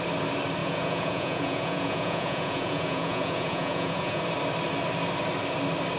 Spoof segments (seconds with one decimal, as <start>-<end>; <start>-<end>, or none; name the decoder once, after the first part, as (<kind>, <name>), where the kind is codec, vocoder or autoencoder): 0.6-4.2 (vocoder, Vocos)

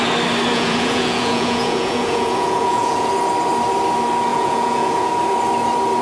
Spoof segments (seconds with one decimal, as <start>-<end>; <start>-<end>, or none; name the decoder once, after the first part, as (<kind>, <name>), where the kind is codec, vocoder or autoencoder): 0.5-3.1 (vocoder, Vocos); 4.3-5.1

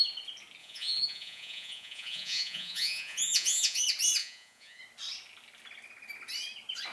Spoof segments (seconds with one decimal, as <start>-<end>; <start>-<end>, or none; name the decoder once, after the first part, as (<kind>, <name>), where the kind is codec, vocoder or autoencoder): 0.6-3.8 (vocoder, Vocos); 4.2-4.8

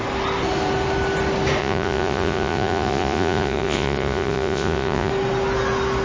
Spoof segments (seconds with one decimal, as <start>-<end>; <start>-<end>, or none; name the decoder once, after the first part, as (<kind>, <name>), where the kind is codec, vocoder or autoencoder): 1.6-5.1 (vocoder, Vocos)

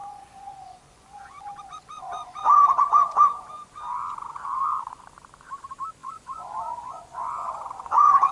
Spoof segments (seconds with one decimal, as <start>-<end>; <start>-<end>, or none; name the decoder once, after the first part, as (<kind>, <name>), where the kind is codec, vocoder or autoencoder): 0.0-5.0 (vocoder, Vocos); 6.0-8.3

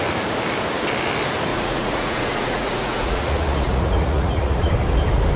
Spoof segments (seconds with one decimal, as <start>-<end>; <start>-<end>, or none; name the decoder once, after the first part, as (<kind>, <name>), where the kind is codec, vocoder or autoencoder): 1.5-4.7 (vocoder, Vocos)